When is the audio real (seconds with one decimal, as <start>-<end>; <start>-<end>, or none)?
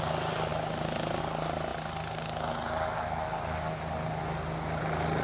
0.0-5.2